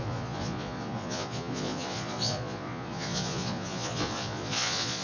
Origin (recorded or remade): remade